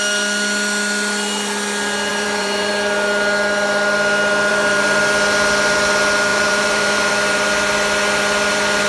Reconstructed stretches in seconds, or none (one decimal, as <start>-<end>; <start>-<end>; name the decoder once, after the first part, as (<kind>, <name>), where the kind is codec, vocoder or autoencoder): 2.1-2.7 (vocoder, BigVGAN v2); 4.5-5.0; 6.3-7.1